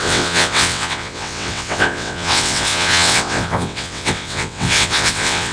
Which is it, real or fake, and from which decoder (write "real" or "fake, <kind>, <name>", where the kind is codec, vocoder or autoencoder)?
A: fake, vocoder, WaveNeXt